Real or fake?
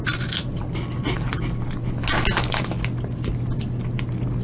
real